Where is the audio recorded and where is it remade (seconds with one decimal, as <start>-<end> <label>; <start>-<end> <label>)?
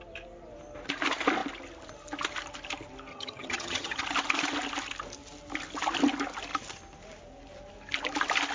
0.0-3.1 recorded; 3.1-4.0 remade; 4.0-8.5 recorded